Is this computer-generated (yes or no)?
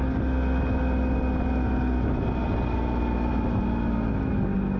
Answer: no